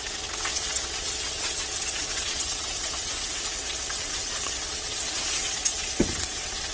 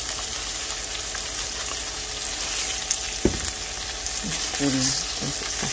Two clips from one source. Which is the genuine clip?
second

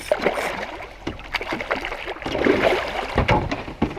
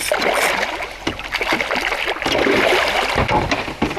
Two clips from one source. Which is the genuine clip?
second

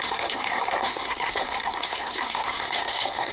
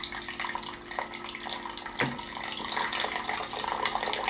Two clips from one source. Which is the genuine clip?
second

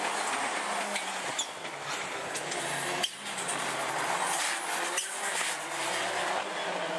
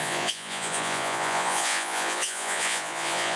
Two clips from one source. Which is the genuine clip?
first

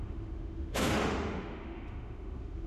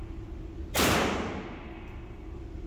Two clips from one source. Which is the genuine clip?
second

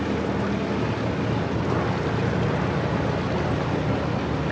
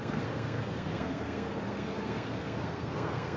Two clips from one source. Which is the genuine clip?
first